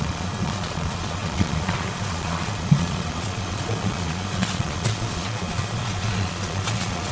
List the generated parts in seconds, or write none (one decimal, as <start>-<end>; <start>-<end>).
0.0-7.1